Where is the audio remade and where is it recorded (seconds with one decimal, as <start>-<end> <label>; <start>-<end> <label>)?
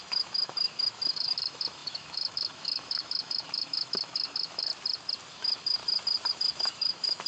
0.0-4.7 remade; 4.7-5.3 recorded; 5.3-5.8 remade; 5.8-6.3 recorded; 6.3-7.3 remade